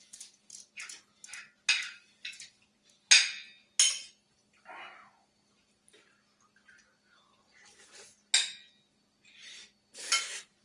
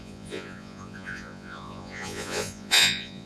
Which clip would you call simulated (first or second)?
second